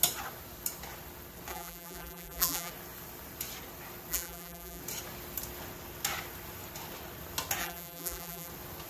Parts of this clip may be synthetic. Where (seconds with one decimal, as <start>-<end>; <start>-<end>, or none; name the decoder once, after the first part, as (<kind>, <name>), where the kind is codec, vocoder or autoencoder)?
1.5-2.7 (vocoder, BigVGAN v2); 4.1-4.8; 7.6-8.5